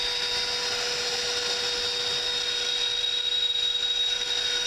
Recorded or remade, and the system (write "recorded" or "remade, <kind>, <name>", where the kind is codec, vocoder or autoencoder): recorded